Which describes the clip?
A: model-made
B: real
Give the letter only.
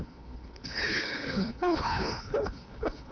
A